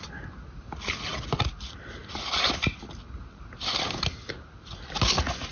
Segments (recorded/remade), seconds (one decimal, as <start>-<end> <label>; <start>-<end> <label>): 0.0-5.5 recorded